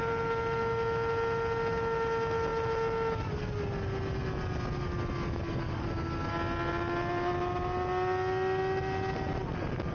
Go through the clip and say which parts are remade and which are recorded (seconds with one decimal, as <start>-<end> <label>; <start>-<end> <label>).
0.0-9.9 recorded